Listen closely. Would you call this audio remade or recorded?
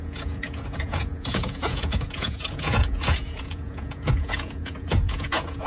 remade